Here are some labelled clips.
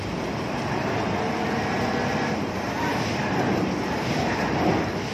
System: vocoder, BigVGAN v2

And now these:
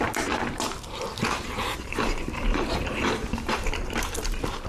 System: vocoder, BigVGAN v2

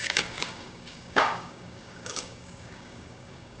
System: codec, DAC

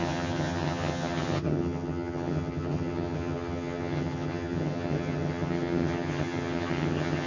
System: vocoder, HiFi-GAN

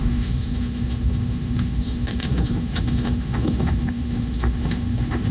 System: autoencoder, DAC-VAE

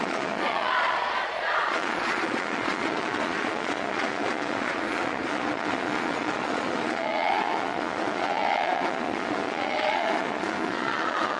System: vocoder, Vocos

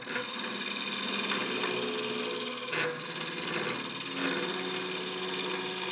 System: none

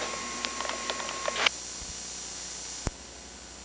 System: none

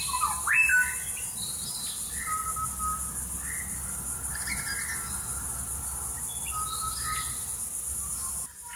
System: none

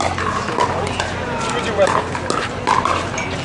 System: none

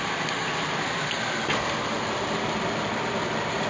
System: none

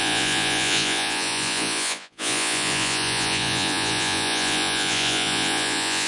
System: vocoder, Vocos